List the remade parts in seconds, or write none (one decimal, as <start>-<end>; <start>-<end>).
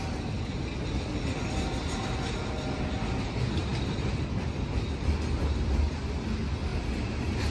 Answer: none